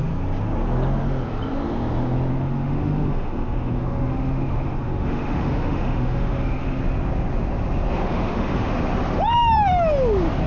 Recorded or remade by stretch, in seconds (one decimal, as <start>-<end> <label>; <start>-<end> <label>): 0.0-2.3 recorded; 2.3-6.8 remade; 6.8-8.1 recorded; 8.1-8.7 remade; 8.7-10.5 recorded